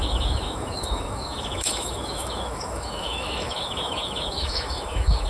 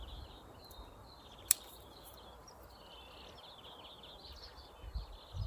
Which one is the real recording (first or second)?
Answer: second